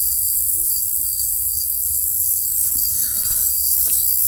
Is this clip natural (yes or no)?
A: no